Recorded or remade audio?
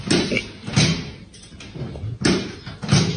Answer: recorded